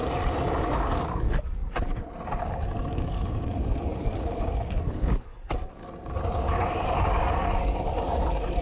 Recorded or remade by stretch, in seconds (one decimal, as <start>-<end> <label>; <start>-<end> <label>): 0.0-0.6 recorded; 0.6-1.6 remade; 1.6-2.4 recorded; 2.4-5.8 remade; 5.8-6.5 recorded; 6.5-8.6 remade